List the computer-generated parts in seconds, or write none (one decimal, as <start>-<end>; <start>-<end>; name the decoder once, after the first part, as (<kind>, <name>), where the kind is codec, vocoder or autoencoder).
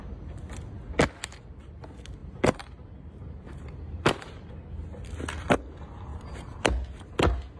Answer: 2.2-4.5 (vocoder, BigVGAN v2); 6.1-6.6